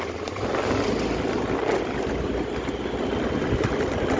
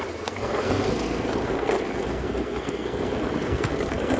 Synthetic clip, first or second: second